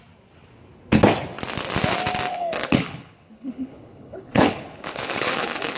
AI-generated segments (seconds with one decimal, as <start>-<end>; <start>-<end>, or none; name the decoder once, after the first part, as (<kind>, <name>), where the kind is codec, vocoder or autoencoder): 2.3-5.8 (codec, HILCodec)